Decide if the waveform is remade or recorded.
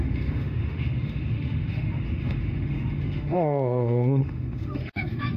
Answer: remade